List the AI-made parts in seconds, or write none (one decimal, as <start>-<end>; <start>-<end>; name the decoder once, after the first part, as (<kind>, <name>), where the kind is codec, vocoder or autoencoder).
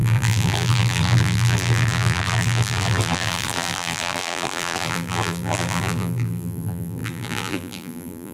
0.0-8.3 (vocoder, BigVGAN v2)